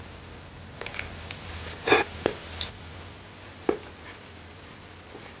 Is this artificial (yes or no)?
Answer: no